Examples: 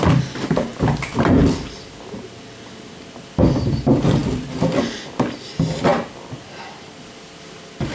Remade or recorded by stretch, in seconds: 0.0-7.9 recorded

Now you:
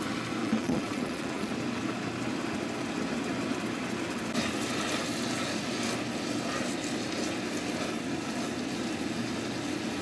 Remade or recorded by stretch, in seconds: 0.0-0.4 recorded; 0.4-1.5 remade; 1.5-10.0 recorded

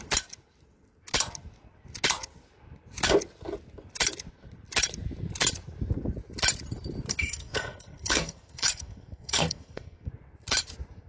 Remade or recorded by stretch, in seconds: 0.0-7.1 recorded; 7.1-10.1 remade; 10.1-11.1 recorded

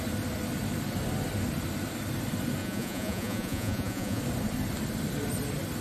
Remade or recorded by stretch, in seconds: 0.0-2.6 recorded; 2.6-4.2 remade; 4.2-5.8 recorded

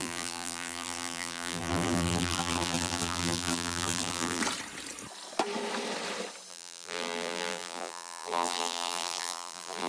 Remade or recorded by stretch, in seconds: 0.0-4.4 remade; 4.4-6.5 recorded; 6.5-9.9 remade

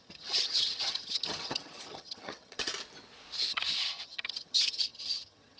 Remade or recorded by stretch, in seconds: 0.0-2.7 remade; 2.7-3.5 recorded; 3.5-5.6 remade

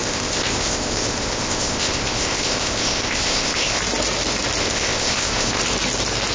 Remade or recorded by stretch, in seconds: 0.0-3.8 remade; 3.8-4.6 recorded; 4.6-5.6 remade; 5.6-6.3 recorded